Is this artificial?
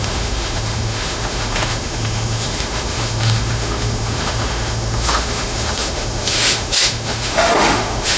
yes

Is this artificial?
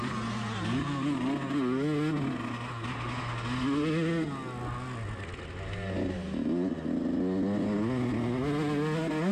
no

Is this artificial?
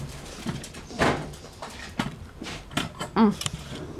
yes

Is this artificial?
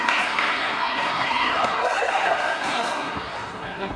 yes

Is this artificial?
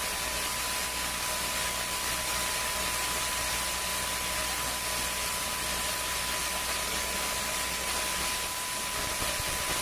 no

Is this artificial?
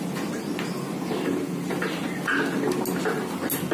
no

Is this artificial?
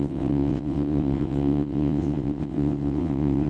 yes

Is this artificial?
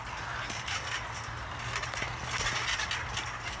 no